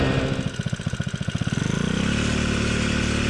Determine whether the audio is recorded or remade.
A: recorded